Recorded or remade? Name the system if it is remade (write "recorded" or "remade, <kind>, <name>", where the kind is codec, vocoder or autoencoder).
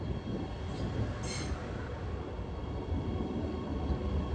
recorded